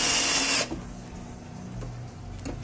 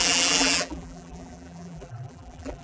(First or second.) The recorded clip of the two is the first